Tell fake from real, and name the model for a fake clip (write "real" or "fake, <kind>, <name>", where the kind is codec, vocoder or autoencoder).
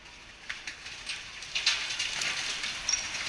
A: real